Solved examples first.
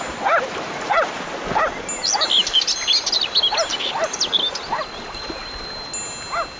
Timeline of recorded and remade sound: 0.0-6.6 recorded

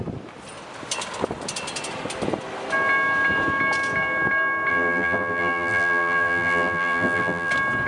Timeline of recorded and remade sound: 0.0-4.7 recorded; 4.7-7.5 remade; 7.5-7.9 recorded

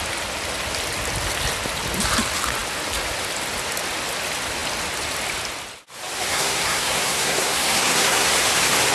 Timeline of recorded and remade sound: 0.0-6.3 recorded; 6.3-8.3 remade; 8.3-8.9 recorded

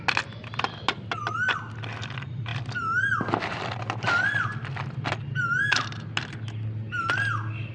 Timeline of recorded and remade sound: 0.0-7.7 recorded

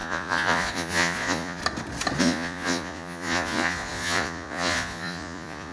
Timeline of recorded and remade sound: 0.0-1.6 remade; 1.6-2.2 recorded; 2.2-5.7 remade

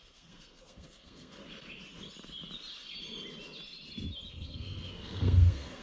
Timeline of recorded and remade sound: 0.0-1.4 remade; 1.4-4.3 recorded; 4.3-5.8 remade

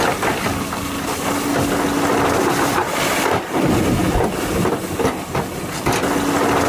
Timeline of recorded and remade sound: 0.0-6.7 recorded